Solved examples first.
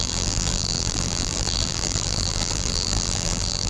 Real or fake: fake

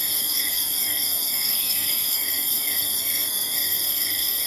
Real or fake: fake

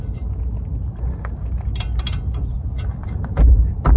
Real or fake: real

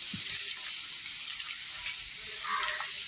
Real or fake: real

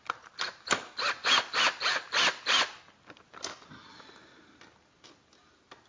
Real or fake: real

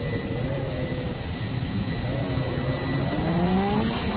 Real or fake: real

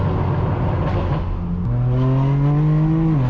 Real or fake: real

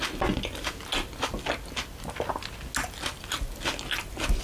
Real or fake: real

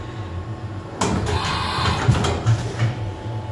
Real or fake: real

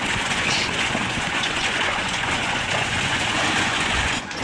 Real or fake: fake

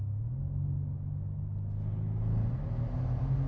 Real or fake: real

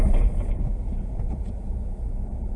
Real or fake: fake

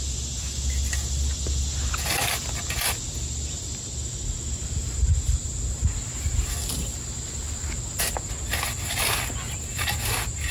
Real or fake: real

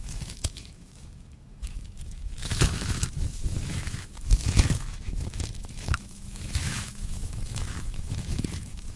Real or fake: fake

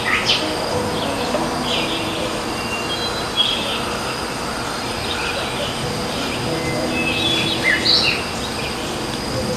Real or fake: real